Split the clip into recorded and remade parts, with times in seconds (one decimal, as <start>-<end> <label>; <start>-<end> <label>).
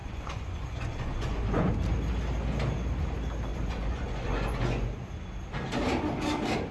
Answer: 0.0-1.7 remade; 1.7-3.5 recorded; 3.5-5.1 remade; 5.1-6.7 recorded